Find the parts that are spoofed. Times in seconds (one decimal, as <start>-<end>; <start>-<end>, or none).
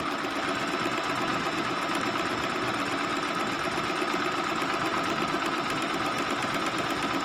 none